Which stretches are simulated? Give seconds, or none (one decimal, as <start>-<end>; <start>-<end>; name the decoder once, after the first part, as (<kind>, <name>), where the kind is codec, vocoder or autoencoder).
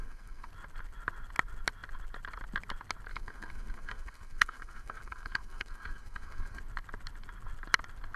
0.0-0.5 (codec, SNAC); 3.1-6.6